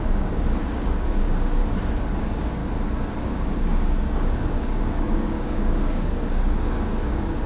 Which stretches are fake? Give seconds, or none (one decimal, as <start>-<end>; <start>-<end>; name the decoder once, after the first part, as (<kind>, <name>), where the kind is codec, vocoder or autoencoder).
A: 0.0-1.6 (codec, DAC); 2.2-2.6; 3.2-7.5